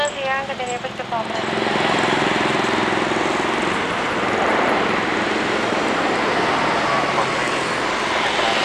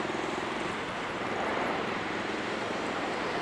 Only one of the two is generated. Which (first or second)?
second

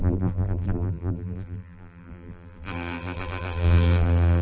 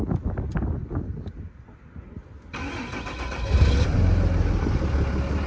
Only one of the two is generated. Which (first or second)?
first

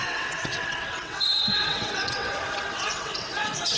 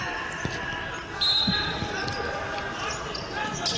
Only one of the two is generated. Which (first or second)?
first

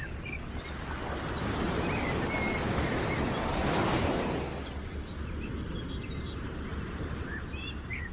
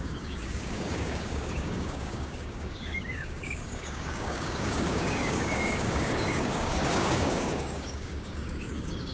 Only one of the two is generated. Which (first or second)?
second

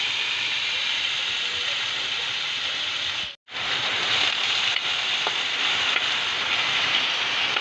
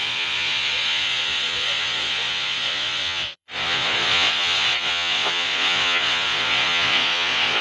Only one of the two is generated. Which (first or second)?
second